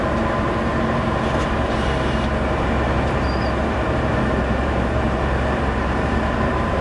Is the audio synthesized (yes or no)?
yes